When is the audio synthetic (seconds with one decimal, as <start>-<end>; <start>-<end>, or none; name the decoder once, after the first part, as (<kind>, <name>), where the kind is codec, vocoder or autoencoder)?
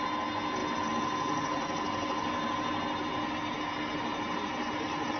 none